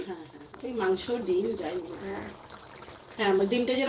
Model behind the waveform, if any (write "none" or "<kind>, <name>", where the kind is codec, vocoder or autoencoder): vocoder, BigVGAN v2